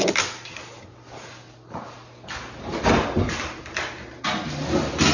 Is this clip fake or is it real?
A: real